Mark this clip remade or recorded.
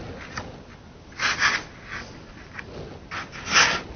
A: recorded